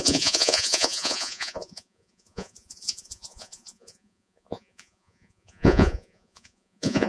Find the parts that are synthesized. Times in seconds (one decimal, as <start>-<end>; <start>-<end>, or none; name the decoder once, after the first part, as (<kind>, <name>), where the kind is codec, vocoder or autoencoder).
0.0-7.1 (vocoder, Vocos)